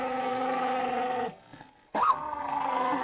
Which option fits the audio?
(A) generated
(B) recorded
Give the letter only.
A